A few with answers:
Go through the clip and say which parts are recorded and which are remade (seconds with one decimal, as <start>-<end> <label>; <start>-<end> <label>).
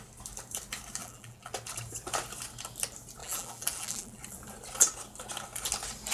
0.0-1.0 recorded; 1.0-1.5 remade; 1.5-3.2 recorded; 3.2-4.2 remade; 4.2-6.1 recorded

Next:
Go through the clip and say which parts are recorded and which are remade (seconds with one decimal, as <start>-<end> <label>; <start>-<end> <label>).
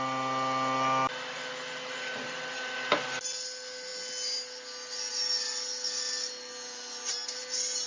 0.0-7.9 recorded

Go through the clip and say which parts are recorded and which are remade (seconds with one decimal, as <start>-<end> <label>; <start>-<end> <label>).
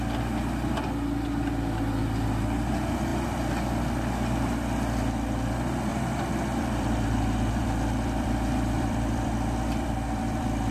0.0-5.9 recorded; 5.9-10.7 remade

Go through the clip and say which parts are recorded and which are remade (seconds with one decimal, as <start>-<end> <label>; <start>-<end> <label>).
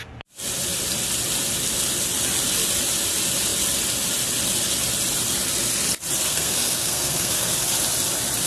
0.0-6.3 recorded; 6.3-7.5 remade; 7.5-8.5 recorded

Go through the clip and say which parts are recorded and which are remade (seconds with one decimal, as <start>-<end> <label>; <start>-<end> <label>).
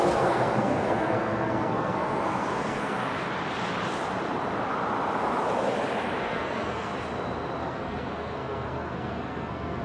0.0-3.1 remade; 3.1-6.2 recorded; 6.2-6.9 remade; 6.9-7.6 recorded; 7.6-9.8 remade